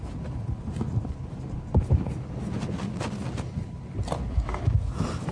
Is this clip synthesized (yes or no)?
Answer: no